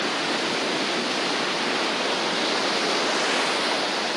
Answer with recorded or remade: recorded